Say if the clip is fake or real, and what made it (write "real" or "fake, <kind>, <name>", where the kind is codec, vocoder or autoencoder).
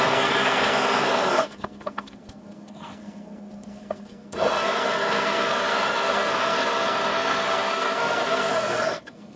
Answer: fake, codec, SNAC